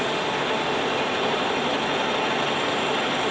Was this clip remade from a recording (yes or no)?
no